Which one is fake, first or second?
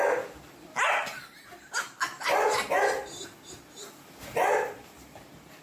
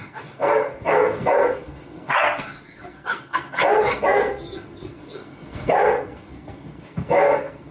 second